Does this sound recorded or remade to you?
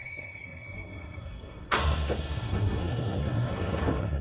remade